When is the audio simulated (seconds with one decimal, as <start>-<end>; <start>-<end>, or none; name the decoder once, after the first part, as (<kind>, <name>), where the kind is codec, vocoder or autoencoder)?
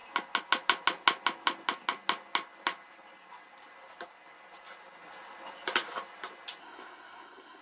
6.6-7.6 (codec, SNAC)